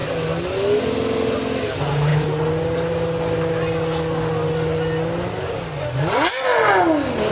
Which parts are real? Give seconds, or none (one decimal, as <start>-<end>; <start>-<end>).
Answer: 0.0-7.3